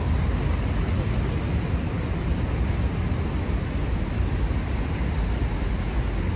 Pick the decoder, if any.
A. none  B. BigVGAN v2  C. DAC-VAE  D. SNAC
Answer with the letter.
A